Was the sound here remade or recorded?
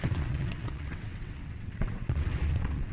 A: remade